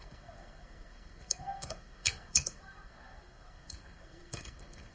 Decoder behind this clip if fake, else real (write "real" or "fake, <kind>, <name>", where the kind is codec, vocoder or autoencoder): fake, codec, SNAC